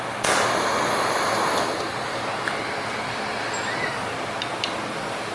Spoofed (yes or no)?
no